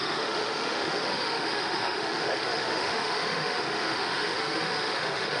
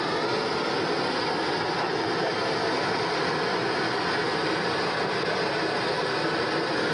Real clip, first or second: second